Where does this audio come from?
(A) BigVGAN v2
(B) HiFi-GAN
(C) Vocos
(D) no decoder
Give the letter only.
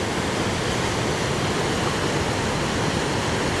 D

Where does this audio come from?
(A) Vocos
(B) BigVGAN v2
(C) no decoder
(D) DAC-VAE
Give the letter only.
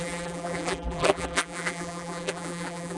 B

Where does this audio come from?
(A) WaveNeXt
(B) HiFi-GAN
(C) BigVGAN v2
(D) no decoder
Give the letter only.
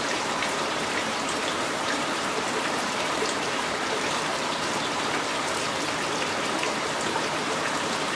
C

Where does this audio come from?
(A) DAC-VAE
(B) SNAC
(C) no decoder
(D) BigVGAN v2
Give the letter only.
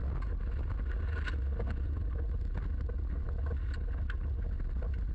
C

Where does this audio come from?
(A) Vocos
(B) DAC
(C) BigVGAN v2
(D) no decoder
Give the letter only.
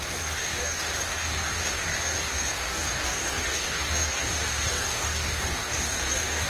B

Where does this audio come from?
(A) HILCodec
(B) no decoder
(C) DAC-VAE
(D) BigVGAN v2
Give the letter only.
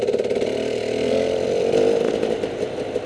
D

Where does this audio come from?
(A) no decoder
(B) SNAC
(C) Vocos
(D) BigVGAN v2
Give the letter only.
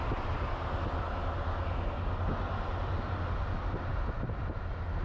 A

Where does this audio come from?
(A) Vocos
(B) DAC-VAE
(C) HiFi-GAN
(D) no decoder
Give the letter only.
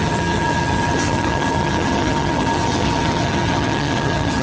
C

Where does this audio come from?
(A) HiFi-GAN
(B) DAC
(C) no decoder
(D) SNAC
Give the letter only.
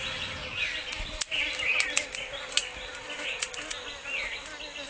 C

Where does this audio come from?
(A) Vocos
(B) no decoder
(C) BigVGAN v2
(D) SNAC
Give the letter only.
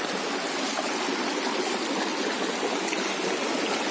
B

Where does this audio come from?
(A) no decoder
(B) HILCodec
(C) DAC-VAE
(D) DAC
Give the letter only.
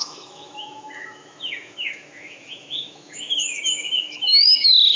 C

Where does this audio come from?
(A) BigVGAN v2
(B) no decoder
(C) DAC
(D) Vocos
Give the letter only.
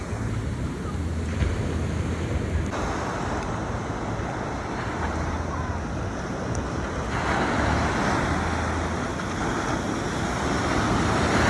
B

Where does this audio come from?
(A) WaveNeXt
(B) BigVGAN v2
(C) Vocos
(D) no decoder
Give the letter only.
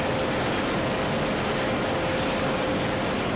D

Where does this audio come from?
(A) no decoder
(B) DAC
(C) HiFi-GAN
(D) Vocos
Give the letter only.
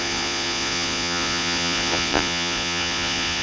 D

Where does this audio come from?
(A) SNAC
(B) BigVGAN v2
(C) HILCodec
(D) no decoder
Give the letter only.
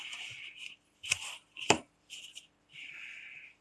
B